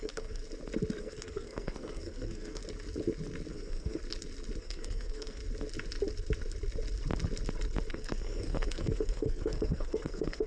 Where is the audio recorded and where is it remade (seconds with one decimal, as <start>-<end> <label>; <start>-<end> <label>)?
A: 0.0-0.4 remade; 0.4-1.0 recorded; 1.0-2.6 remade; 2.6-3.5 recorded; 3.5-4.0 remade; 4.0-4.6 recorded; 4.6-5.4 remade; 5.4-7.9 recorded; 7.9-10.5 remade